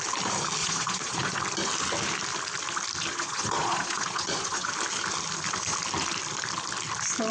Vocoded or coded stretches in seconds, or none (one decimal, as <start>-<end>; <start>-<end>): 0.6-1.4; 3.1-4.7

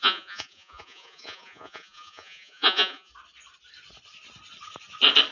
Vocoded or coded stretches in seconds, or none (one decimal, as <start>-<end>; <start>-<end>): 0.0-3.1

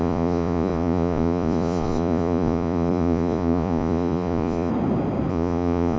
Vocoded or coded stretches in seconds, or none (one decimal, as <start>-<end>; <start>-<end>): 0.0-4.7; 5.3-6.0

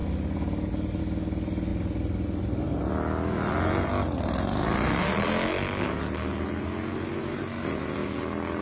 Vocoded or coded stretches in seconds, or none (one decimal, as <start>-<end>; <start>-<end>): none

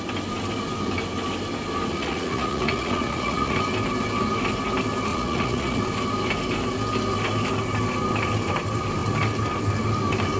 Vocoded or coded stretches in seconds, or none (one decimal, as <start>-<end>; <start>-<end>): 1.9-3.6; 5.1-5.8

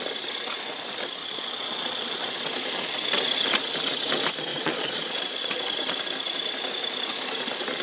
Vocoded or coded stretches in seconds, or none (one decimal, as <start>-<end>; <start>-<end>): 1.2-2.4; 4.5-5.6

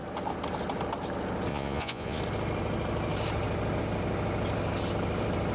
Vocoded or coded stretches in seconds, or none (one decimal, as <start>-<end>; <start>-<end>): 1.5-2.2